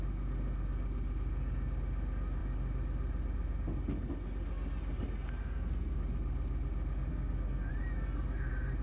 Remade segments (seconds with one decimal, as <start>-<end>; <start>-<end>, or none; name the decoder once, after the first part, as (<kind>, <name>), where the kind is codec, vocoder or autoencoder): 5.4-6.0 (codec, SNAC); 7.1-7.7